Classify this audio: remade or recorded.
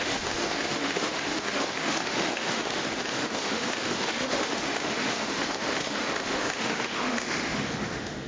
remade